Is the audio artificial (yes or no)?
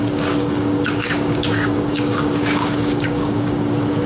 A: yes